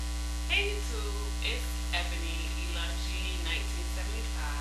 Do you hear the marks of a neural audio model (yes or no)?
no